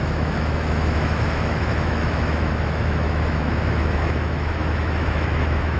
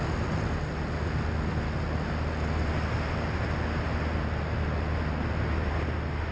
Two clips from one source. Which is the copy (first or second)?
first